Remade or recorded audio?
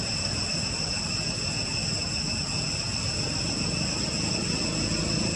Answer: recorded